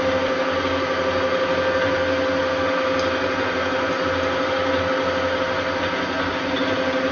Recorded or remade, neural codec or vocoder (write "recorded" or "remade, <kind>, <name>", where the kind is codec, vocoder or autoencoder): recorded